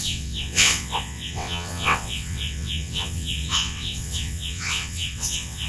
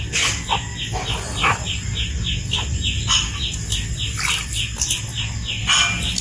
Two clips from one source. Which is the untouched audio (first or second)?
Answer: second